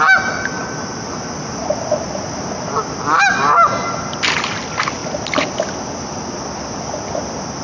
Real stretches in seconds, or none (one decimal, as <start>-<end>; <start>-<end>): 0.0-7.6